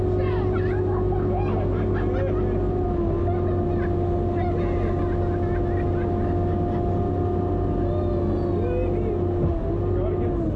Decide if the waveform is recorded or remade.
recorded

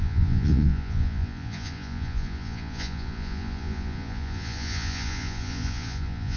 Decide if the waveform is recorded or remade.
remade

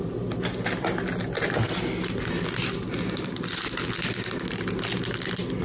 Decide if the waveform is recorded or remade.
recorded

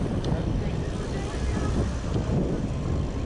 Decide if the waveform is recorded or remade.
recorded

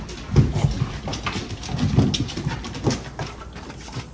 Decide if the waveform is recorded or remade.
recorded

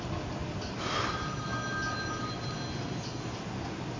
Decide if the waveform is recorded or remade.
recorded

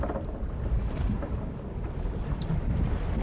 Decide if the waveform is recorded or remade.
recorded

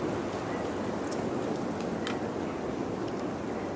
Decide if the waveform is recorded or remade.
recorded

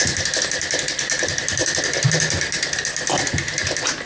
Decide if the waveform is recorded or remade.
recorded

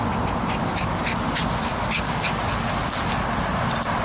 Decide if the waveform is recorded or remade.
recorded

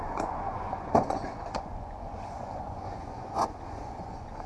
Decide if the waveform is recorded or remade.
remade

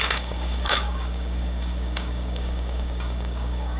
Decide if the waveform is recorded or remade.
remade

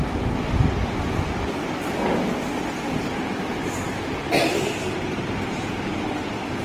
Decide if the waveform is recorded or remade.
recorded